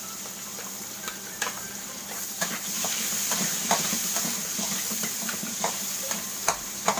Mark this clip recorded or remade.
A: remade